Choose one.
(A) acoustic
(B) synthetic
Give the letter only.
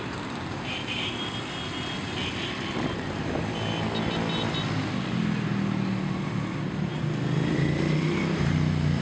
A